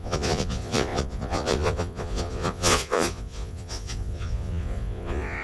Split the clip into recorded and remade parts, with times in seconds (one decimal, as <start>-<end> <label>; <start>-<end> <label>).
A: 0.0-5.4 remade